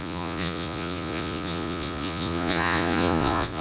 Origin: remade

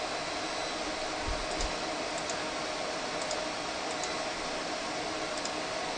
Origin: recorded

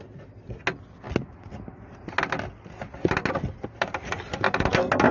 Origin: recorded